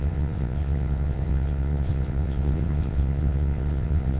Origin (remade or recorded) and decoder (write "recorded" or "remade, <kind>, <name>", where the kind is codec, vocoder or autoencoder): remade, vocoder, WaveNeXt